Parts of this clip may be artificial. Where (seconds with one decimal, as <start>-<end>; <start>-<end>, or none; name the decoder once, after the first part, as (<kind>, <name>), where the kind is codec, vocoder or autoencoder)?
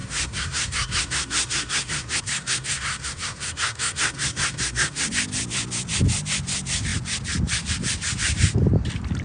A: 0.0-5.1 (codec, SNAC)